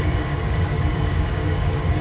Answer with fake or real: fake